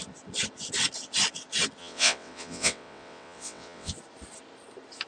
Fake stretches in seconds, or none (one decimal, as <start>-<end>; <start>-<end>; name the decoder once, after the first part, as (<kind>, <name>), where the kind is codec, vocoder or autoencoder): 1.8-3.9 (vocoder, WaveNeXt)